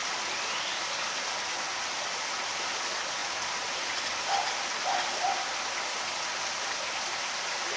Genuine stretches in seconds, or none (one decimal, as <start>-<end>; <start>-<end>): 0.0-7.8